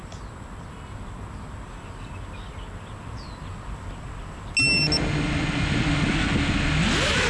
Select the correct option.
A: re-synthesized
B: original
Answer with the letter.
B